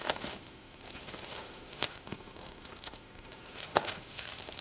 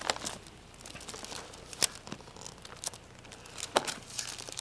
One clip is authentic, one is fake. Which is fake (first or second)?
first